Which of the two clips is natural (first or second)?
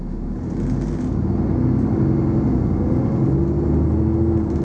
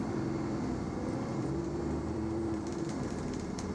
first